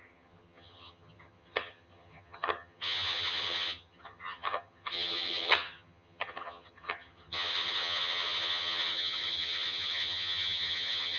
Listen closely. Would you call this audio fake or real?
fake